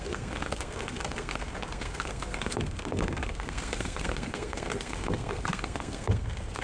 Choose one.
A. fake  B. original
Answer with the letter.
A